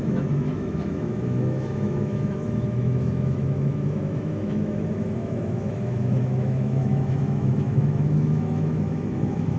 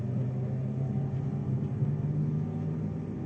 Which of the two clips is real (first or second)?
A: second